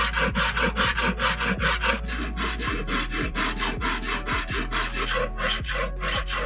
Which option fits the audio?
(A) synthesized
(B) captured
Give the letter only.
B